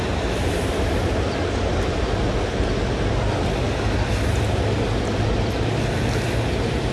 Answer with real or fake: real